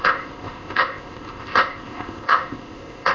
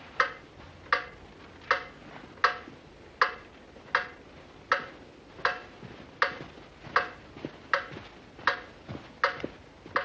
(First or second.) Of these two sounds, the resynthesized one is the first